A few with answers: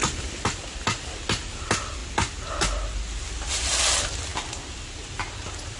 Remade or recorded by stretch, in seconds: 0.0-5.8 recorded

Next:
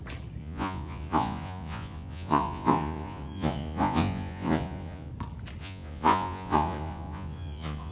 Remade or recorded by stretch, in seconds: 0.0-0.4 recorded; 0.4-5.1 remade; 5.1-5.6 recorded; 5.6-7.9 remade

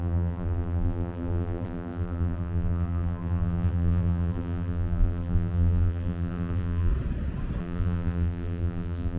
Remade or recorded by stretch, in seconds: 0.0-6.9 remade; 6.9-7.6 recorded; 7.6-9.2 remade

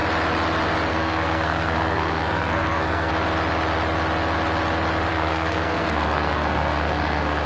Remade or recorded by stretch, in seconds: 0.0-0.9 recorded; 0.9-3.1 remade; 3.1-5.1 recorded; 5.1-7.5 remade